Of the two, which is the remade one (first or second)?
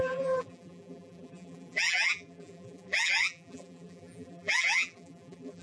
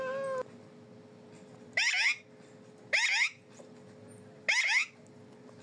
first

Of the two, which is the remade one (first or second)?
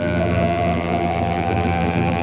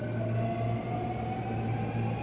first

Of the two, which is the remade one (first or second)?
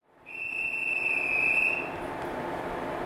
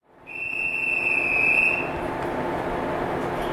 first